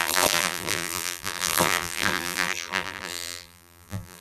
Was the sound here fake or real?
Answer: fake